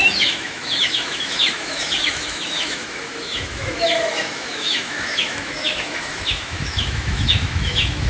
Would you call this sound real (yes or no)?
no